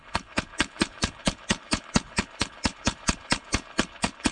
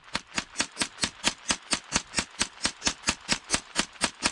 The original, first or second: second